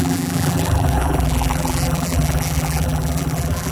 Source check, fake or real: fake